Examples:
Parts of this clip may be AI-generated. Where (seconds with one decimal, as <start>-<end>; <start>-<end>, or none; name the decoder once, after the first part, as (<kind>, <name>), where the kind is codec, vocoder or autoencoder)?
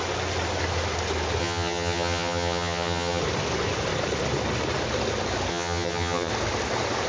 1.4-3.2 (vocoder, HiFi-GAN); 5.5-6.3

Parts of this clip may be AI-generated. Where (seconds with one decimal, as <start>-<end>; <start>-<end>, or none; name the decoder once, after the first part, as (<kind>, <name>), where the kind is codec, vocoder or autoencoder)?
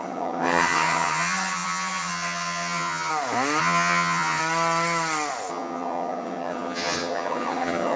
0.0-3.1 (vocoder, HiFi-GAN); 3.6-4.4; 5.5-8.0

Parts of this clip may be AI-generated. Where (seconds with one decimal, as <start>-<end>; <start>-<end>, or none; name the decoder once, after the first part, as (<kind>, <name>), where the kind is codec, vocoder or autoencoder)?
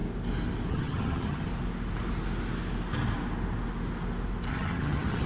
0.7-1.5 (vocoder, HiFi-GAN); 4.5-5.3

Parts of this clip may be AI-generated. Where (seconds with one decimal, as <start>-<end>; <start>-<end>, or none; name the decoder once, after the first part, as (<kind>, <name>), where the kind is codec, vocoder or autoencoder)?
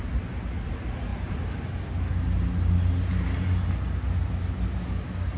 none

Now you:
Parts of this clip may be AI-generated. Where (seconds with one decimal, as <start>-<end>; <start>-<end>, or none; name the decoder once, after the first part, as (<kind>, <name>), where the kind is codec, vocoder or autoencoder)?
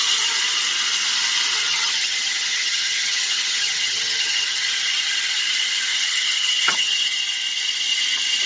1.7-4.6 (vocoder, HiFi-GAN); 5.9-7.2